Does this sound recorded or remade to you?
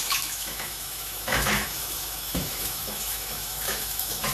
remade